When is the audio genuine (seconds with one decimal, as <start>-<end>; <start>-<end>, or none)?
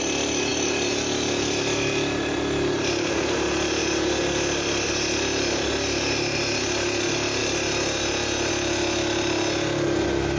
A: 0.0-10.4